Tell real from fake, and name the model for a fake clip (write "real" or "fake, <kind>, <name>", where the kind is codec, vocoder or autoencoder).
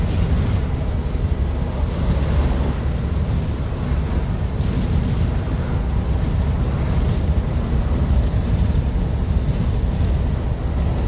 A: real